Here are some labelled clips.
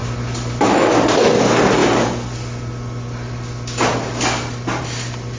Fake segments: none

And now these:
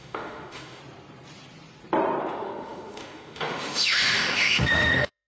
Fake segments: 0.0-0.8 (autoencoder, DAC-VAE); 2.2-5.3